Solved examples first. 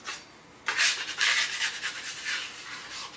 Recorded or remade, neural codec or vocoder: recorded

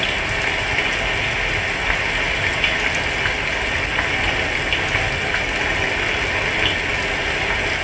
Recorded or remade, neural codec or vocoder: recorded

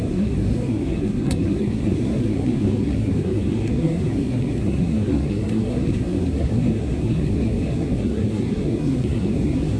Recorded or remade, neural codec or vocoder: remade, codec, SNAC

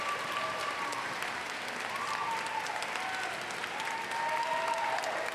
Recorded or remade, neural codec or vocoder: recorded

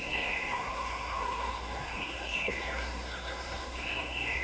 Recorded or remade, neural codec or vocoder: remade, codec, SNAC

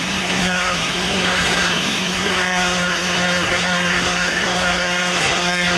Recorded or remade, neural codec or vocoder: remade, codec, SNAC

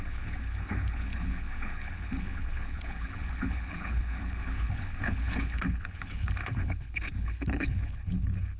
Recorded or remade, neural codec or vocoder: remade, codec, HILCodec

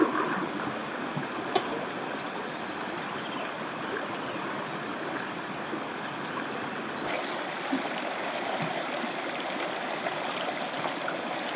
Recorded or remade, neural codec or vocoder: recorded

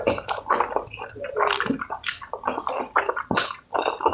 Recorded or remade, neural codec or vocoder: recorded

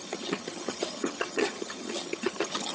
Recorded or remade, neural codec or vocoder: remade, vocoder, HiFi-GAN